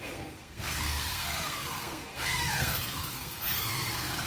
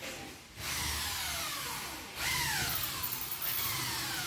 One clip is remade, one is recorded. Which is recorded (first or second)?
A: second